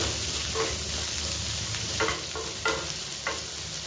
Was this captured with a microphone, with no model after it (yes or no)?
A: yes